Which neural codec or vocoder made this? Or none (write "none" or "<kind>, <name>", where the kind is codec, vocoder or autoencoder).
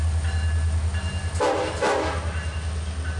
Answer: none